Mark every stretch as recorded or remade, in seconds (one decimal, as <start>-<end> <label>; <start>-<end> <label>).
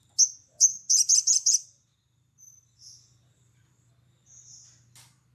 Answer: 0.0-0.7 recorded; 0.7-3.9 remade; 3.9-5.3 recorded